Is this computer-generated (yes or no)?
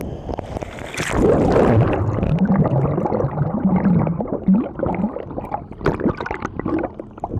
no